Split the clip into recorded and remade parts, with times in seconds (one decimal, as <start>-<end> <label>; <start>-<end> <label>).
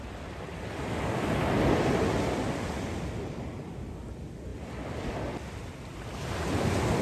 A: 0.0-2.4 recorded; 2.4-3.7 remade; 3.7-7.0 recorded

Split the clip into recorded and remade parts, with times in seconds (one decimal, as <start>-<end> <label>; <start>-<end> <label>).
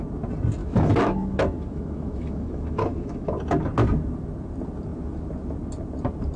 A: 0.0-0.6 recorded; 0.6-3.3 remade; 3.3-6.4 recorded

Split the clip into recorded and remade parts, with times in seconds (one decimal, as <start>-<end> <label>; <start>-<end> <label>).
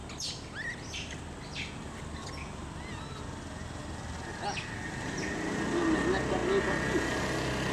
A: 0.0-7.7 recorded